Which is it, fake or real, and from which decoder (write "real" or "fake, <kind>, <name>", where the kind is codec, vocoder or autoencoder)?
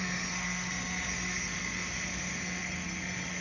fake, codec, SNAC